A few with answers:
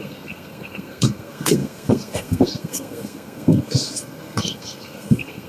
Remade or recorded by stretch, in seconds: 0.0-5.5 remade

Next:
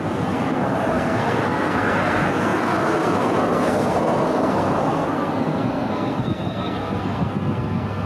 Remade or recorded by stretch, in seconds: 0.0-8.1 remade